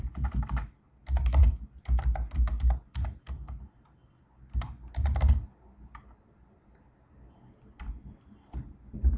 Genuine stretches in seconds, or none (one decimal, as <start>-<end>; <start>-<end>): 0.0-9.2